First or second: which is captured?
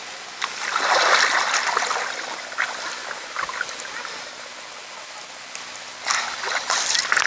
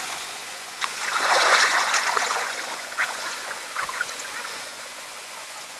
first